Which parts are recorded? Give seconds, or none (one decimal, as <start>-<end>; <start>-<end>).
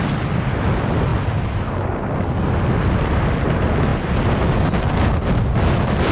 0.0-6.1